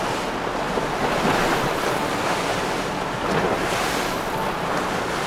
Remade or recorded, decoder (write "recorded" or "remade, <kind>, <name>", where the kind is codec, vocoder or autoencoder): recorded